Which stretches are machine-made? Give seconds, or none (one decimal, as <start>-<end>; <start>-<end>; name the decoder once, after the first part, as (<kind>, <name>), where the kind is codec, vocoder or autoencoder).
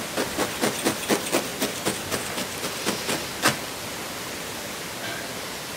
none